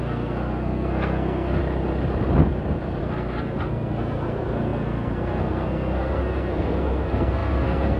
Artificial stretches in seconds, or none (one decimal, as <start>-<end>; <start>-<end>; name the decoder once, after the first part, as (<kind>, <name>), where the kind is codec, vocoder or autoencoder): 0.0-1.6 (codec, SNAC); 3.0-8.0